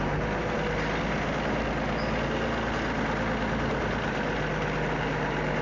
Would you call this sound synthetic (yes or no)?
no